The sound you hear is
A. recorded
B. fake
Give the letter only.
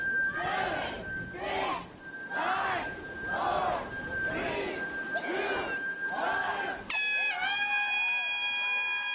A